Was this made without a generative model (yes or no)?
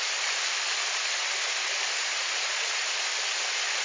yes